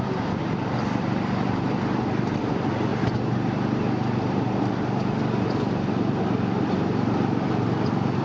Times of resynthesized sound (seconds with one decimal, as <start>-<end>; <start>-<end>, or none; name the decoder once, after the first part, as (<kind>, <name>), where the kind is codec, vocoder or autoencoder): none